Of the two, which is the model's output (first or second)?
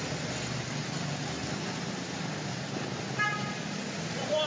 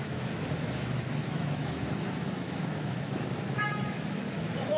second